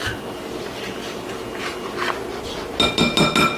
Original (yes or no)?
yes